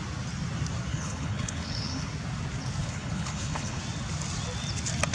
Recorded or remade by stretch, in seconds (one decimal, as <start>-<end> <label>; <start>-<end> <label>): 0.0-0.9 recorded; 0.9-2.1 remade; 2.1-2.8 recorded; 2.8-3.8 remade; 3.8-5.1 recorded